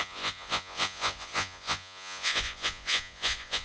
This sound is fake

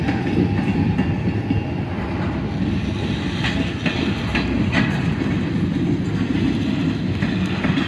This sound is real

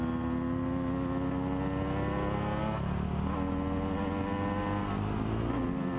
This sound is real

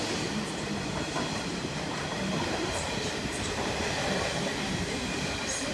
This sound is fake